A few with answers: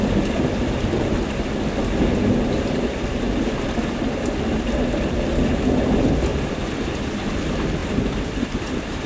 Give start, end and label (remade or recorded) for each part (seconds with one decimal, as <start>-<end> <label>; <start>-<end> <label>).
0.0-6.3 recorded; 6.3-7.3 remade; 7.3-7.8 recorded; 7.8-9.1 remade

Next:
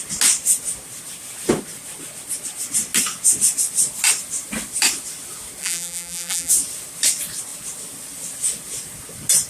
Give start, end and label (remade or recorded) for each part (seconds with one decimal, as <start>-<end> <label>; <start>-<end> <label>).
0.0-5.6 recorded; 5.6-6.5 remade; 6.5-9.5 recorded

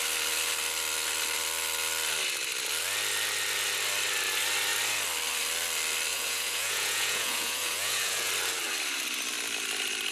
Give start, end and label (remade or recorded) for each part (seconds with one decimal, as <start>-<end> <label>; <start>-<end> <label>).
0.0-6.1 recorded; 6.1-8.3 remade; 8.3-10.1 recorded